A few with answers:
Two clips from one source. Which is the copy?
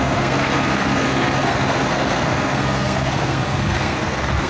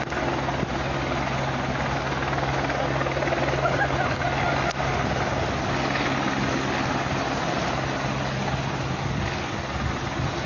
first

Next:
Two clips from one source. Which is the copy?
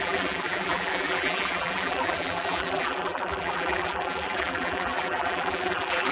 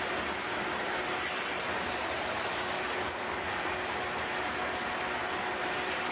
first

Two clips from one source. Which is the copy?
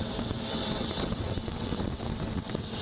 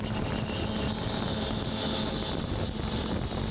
first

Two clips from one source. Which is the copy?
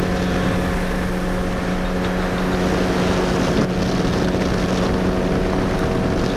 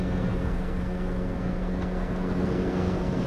second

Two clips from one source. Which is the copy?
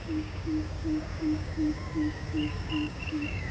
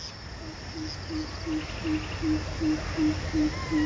first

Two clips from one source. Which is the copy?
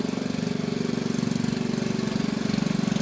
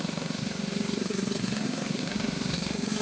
second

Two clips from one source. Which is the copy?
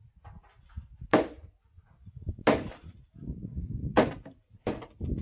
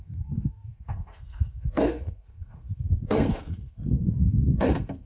second